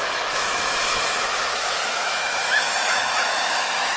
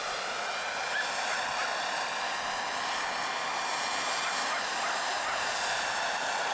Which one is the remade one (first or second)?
first